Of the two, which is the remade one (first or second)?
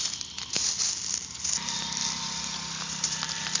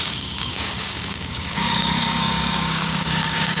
second